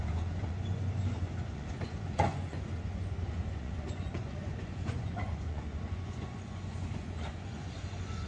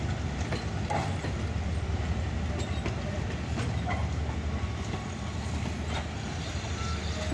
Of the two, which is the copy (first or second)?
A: first